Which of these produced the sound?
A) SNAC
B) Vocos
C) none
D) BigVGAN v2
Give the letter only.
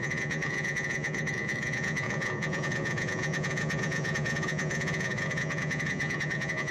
B